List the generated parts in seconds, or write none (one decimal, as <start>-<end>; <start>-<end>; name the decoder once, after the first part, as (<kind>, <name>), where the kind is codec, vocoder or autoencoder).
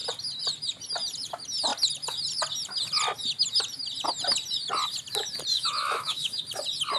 5.5-6.4 (autoencoder, DAC-VAE)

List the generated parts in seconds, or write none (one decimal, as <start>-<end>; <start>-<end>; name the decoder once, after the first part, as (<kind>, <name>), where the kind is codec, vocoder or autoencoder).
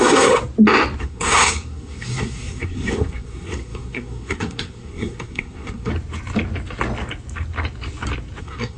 0.0-0.4 (codec, SNAC); 1.0-5.9; 8.4-8.8